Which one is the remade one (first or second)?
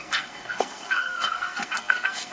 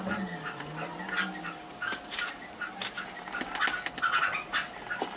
first